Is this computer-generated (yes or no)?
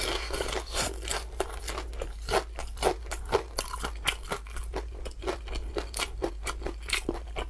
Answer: no